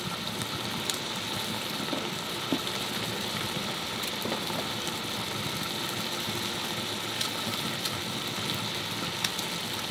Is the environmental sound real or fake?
real